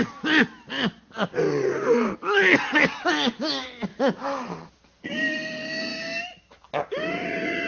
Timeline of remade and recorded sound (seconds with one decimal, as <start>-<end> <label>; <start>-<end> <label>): 0.0-3.9 recorded; 3.9-4.8 remade; 4.8-5.9 recorded; 5.9-6.7 remade; 6.7-7.7 recorded